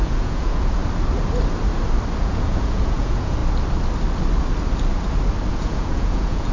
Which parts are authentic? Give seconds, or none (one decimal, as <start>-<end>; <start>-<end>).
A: 0.8-2.2; 3.4-5.5